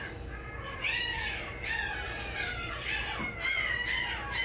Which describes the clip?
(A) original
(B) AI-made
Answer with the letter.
A